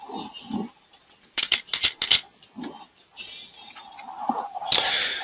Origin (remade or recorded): recorded